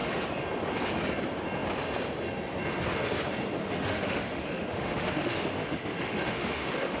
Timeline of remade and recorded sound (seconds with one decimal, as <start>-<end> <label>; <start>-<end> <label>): 0.0-3.6 recorded; 3.6-7.0 remade